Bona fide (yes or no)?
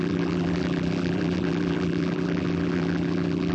no